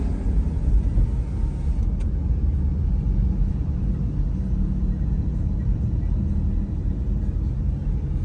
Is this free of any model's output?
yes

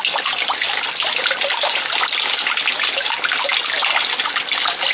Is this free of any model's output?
yes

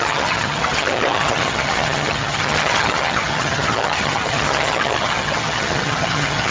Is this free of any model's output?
no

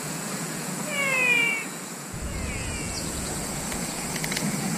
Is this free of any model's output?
no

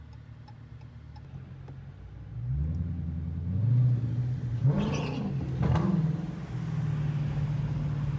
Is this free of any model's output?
yes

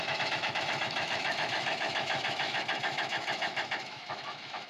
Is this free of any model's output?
no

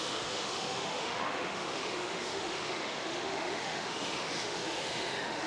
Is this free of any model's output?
no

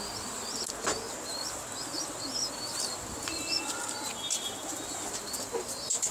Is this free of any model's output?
yes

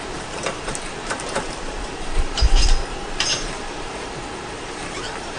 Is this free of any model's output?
no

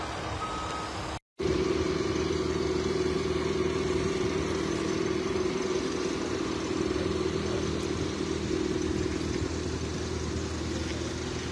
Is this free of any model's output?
yes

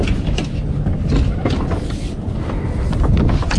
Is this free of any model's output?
yes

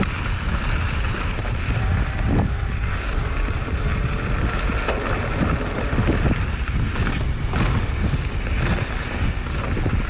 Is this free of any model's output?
yes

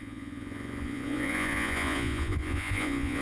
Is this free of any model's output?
no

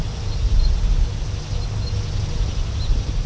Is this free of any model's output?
yes